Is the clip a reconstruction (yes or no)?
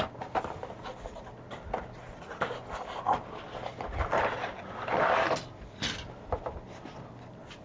no